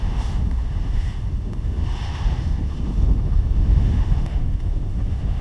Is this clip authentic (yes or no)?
no